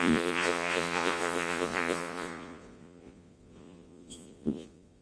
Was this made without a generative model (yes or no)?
no